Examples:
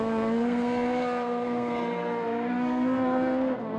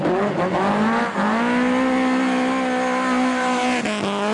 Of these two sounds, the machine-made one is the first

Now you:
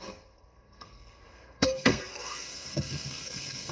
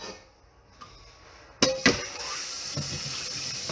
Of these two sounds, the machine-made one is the first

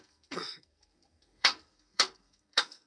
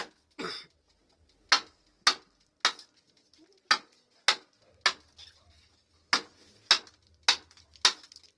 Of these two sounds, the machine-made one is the first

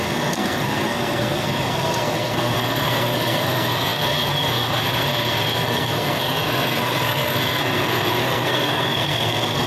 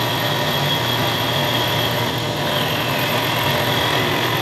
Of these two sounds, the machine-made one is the first